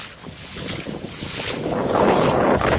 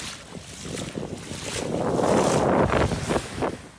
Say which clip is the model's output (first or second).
first